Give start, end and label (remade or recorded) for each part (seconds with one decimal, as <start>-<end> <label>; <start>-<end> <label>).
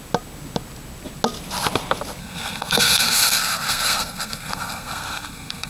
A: 0.0-2.2 recorded; 2.2-5.7 remade